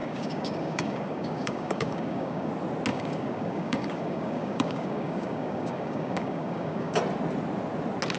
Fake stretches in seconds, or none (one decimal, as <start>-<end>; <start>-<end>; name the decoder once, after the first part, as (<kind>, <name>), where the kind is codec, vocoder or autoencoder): 0.0-2.5 (codec, DAC); 2.9-7.0